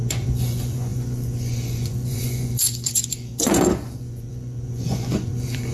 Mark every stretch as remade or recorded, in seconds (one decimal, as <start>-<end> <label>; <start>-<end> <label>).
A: 0.0-5.7 remade